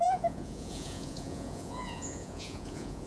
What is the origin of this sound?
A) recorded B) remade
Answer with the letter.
B